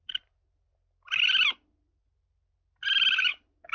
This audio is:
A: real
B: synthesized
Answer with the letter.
A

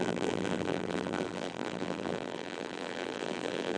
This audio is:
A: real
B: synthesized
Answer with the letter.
B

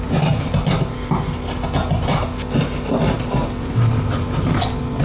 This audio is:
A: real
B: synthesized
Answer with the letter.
A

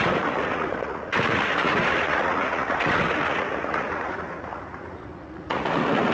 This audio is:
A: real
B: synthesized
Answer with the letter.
B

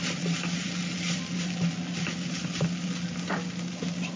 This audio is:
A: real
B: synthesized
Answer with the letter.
A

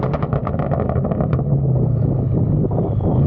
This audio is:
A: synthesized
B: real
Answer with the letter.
B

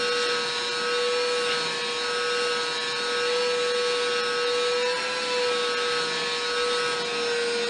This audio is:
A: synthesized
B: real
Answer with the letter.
B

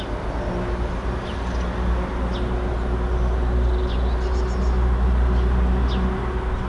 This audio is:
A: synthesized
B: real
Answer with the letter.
B